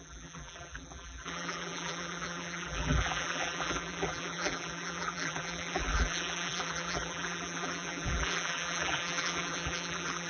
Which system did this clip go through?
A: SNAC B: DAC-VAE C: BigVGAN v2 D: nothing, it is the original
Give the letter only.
C